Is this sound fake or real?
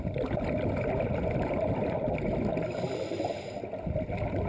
real